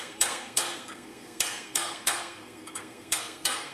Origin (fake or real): fake